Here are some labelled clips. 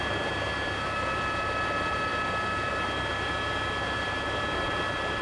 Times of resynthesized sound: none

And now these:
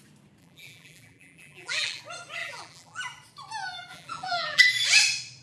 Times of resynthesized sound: 0.4-2.0 (vocoder, BigVGAN v2); 2.4-3.0; 3.9-4.6

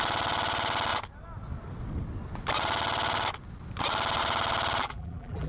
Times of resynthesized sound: 4.8-5.5 (vocoder, BigVGAN v2)

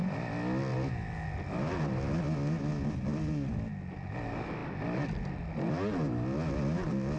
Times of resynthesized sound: none